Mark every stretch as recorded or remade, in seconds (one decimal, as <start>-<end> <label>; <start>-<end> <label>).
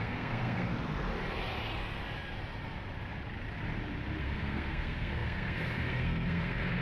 0.0-0.7 remade; 0.7-4.2 recorded; 4.2-6.8 remade